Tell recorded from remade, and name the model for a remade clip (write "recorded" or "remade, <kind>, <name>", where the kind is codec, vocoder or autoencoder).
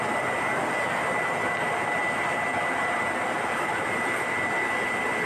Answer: remade, vocoder, BigVGAN v2